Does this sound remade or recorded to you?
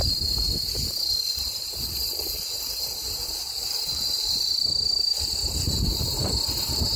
recorded